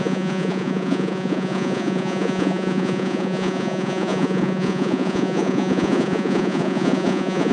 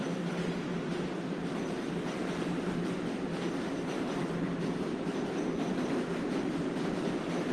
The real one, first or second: second